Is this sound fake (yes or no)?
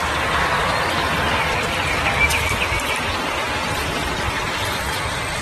no